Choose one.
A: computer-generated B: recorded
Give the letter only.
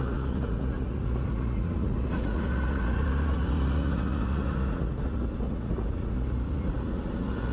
A